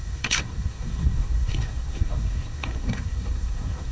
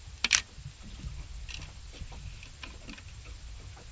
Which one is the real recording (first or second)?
second